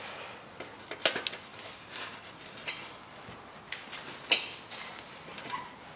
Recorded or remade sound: recorded